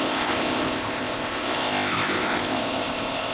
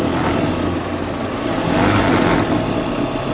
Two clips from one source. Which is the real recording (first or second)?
second